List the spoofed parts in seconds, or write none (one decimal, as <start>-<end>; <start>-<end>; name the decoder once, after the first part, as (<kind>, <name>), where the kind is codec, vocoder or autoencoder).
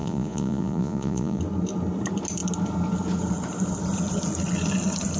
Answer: 0.0-1.4 (vocoder, Vocos)